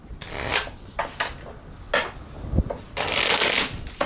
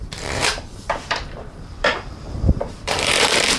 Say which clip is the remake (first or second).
second